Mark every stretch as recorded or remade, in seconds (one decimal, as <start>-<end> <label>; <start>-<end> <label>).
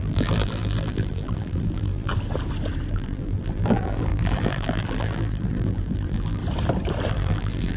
0.0-2.1 remade; 2.1-2.9 recorded; 2.9-6.4 remade; 6.4-7.1 recorded; 7.1-7.8 remade